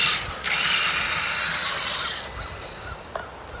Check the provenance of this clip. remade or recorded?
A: recorded